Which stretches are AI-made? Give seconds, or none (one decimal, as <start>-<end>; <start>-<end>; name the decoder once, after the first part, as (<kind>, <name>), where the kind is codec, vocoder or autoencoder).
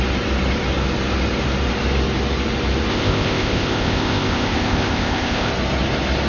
2.9-5.5 (codec, ZipCodec)